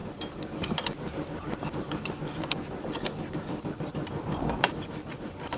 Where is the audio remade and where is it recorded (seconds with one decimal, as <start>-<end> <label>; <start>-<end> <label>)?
0.0-5.6 remade